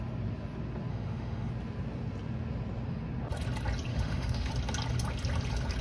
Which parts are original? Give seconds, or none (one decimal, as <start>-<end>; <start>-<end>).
0.0-0.9; 1.5-3.9; 4.5-5.8